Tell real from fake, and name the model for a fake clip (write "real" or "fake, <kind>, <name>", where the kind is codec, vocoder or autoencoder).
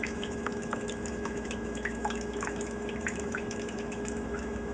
fake, autoencoder, DAC-VAE